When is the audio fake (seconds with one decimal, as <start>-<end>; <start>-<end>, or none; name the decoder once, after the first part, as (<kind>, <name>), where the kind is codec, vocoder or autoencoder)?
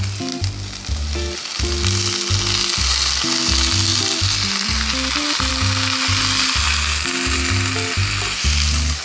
none